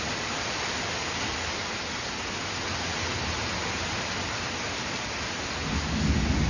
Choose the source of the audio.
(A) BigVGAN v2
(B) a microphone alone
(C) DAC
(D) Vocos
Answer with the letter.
B